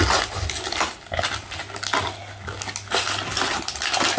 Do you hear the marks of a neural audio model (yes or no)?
no